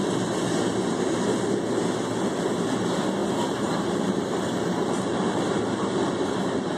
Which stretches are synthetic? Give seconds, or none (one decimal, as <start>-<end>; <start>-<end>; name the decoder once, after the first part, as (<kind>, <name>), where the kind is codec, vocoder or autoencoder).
3.2-6.1 (vocoder, BigVGAN v2)